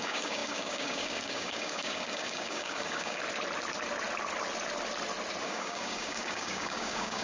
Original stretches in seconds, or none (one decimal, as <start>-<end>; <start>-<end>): 3.2-5.4